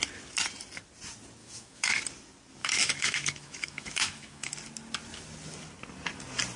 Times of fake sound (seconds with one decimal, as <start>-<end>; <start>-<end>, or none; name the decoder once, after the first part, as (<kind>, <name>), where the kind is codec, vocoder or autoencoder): 1.4-2.0 (autoencoder, DAC-VAE); 2.6-4.5